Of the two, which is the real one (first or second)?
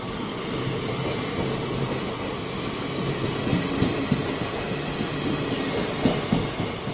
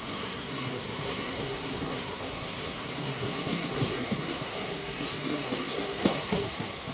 first